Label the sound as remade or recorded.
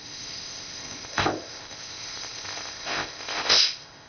remade